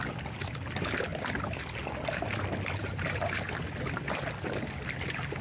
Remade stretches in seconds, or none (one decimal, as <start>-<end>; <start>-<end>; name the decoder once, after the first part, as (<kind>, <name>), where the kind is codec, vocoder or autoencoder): 0.0-5.4 (vocoder, BigVGAN v2)